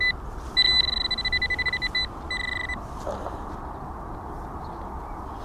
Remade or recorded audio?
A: recorded